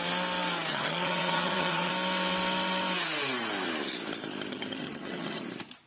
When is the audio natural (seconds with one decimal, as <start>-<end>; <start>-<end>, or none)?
0.0-0.7; 1.9-4.5; 5.4-5.9